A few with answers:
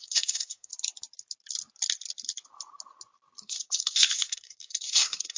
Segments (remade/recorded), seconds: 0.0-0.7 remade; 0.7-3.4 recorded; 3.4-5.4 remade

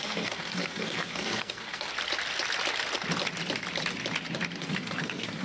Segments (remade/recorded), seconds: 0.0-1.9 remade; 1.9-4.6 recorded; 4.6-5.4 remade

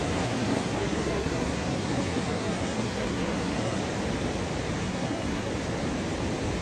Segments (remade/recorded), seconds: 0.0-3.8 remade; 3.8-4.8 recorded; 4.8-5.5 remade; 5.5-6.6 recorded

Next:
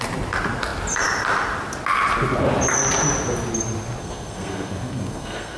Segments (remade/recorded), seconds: 0.0-4.0 recorded; 4.0-5.6 remade

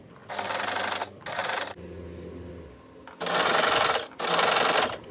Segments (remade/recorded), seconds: 0.0-5.1 recorded